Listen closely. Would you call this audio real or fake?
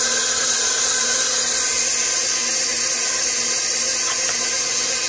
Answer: real